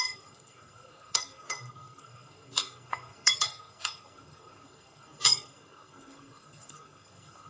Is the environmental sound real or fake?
fake